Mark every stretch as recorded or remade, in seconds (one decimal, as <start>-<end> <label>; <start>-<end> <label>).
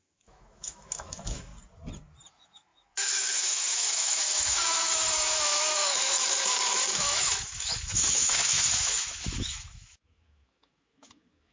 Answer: 0.0-1.5 remade; 1.5-2.3 recorded; 2.3-11.5 remade